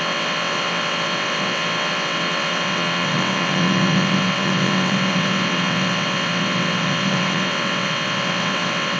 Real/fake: fake